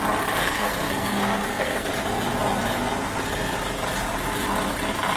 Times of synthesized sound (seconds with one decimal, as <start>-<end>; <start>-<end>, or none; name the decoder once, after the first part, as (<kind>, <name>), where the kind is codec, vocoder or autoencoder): 0.4-1.9 (codec, SNAC)